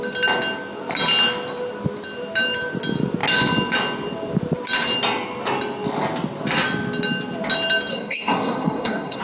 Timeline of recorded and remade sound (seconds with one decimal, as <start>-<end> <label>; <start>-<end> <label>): 0.0-7.9 recorded; 7.9-9.2 remade